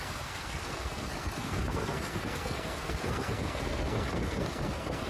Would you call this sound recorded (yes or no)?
no